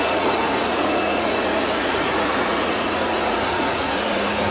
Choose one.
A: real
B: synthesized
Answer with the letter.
B